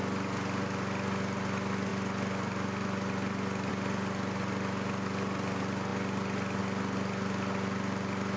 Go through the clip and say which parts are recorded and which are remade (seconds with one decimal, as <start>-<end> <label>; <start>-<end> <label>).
0.0-8.4 recorded